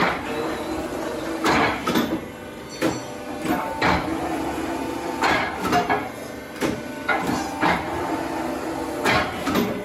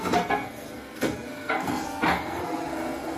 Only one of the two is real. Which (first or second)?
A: first